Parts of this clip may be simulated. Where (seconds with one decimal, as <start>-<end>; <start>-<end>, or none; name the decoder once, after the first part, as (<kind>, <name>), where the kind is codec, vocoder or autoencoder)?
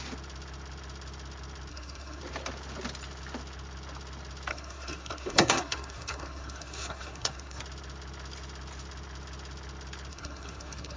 1.7-2.2 (codec, SNAC); 4.5-7.6; 10.1-11.0